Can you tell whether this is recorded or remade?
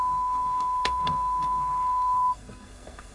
remade